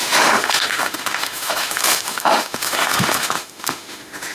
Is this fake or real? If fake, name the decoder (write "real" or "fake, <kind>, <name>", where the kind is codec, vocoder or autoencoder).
fake, autoencoder, DAC-VAE